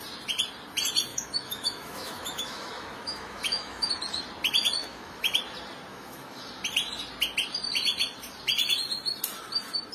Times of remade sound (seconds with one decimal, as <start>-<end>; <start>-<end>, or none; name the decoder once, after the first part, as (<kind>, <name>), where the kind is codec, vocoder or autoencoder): 1.1-3.9 (autoencoder, DAC-VAE); 4.8-5.4; 5.9-6.4